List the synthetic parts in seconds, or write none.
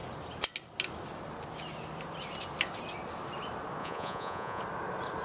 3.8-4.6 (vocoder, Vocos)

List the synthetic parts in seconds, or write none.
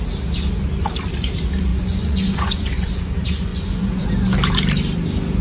1.7-3.0 (vocoder, Vocos); 3.5-4.1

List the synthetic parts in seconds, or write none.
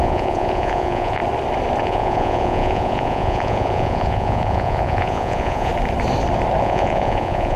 0.0-1.2 (vocoder, Vocos); 1.8-5.7; 6.6-7.6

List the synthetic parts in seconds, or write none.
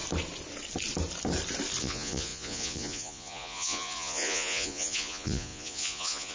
1.8-6.3 (vocoder, Vocos)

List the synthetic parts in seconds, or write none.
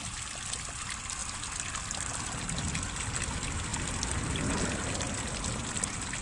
none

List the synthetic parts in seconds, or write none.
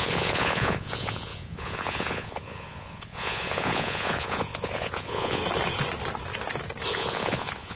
0.0-5.4 (vocoder, Vocos); 6.9-7.8